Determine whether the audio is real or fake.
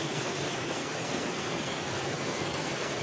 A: fake